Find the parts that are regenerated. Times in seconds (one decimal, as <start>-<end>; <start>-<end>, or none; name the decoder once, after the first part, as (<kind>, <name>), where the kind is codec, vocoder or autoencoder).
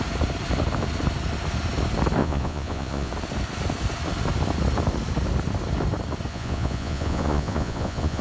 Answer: 2.2-3.1 (vocoder, Vocos); 6.3-8.2